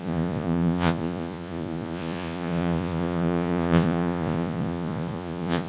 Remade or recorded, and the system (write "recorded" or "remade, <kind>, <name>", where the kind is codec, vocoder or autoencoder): remade, vocoder, Vocos